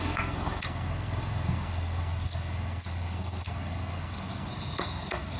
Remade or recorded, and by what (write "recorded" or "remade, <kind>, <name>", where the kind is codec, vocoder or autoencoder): remade, codec, SNAC